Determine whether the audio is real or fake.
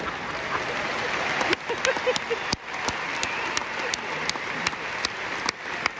real